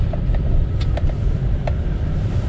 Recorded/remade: remade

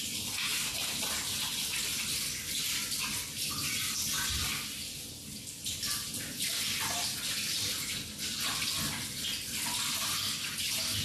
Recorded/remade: recorded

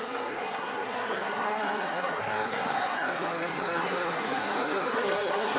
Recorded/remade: remade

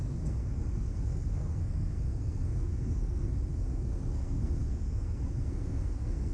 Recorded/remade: remade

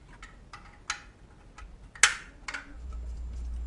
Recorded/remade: recorded